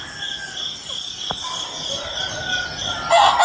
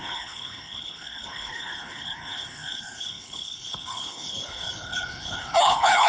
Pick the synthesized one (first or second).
second